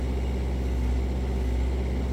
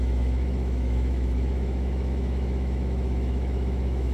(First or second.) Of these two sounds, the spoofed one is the second